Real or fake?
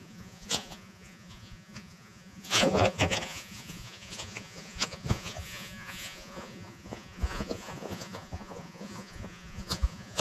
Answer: fake